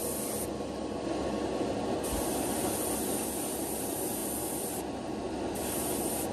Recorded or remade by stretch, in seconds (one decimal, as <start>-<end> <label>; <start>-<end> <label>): 0.0-3.8 recorded; 3.8-4.2 remade; 4.2-4.9 recorded; 4.9-6.3 remade